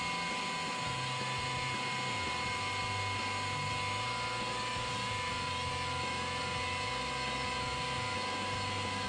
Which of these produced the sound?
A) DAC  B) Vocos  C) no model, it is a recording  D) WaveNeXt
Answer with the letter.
C